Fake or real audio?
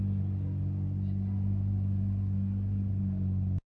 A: real